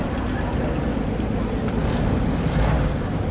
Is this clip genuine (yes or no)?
no